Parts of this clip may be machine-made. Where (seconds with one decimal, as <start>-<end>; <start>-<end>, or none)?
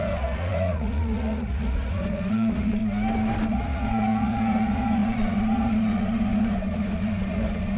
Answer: 0.0-2.8; 3.5-7.8